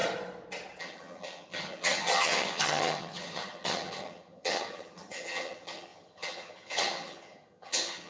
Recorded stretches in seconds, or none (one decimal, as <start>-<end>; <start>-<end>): 0.0-0.8